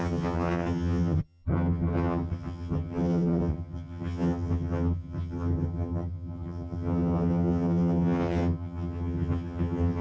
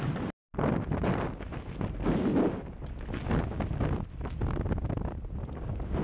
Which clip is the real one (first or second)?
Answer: second